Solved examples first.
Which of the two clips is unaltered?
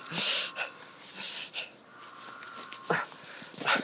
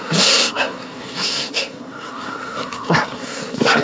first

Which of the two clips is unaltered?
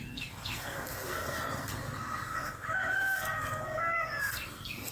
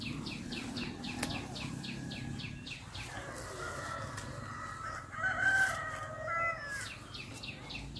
second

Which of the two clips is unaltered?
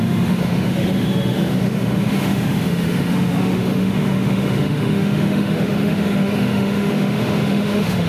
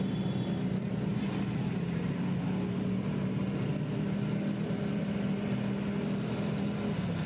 second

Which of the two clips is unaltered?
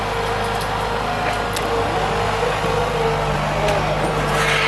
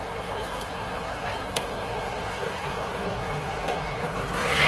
first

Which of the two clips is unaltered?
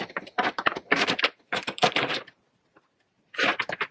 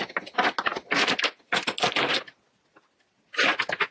second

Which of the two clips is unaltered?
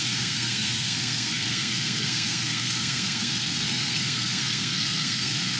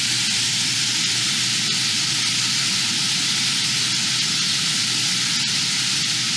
second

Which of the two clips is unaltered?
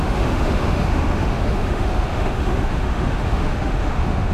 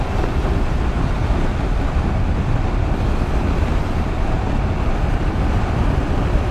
second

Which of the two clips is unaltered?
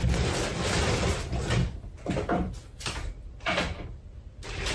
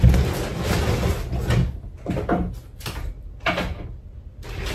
second